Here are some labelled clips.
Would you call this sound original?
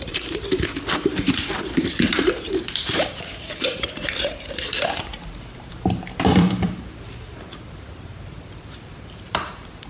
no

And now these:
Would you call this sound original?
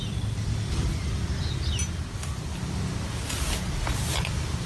yes